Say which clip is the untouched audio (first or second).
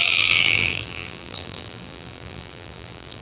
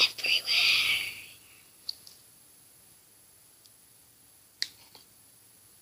second